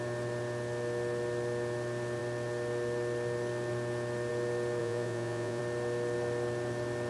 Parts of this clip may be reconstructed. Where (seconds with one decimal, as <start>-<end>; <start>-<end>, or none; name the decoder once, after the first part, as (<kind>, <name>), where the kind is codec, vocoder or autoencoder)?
4.8-5.6 (vocoder, Vocos)